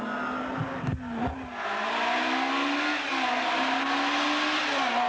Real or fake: real